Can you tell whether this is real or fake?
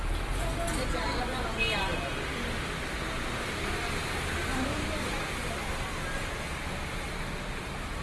real